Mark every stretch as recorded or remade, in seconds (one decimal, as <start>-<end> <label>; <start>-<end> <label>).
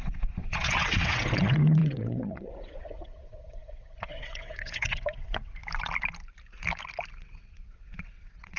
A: 0.0-5.6 remade; 5.6-7.2 recorded; 7.2-8.6 remade